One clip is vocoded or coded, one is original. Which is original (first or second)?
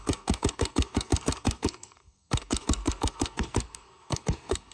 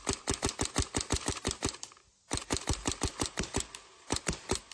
second